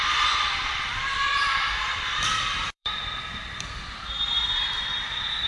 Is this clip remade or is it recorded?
remade